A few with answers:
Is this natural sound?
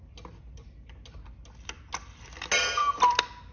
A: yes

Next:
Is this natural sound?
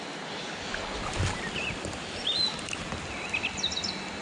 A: yes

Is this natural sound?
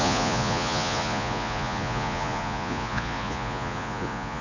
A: no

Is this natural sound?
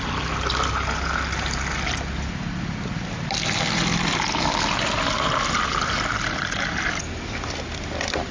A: yes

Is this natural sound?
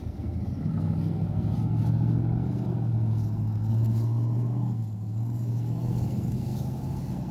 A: no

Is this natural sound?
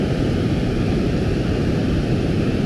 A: no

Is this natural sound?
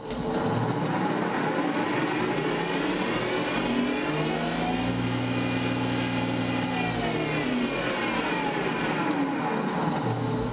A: yes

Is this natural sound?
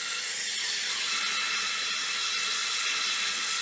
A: yes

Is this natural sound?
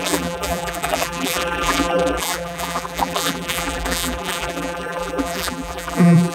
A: no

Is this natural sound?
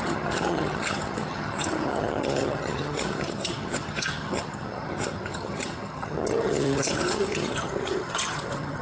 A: no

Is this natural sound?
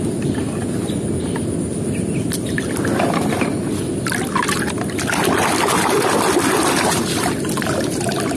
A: yes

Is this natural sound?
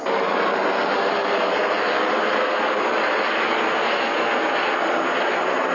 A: yes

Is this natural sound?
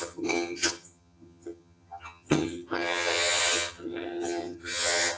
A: no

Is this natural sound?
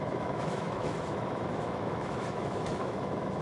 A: no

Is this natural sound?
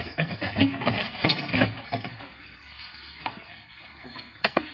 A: no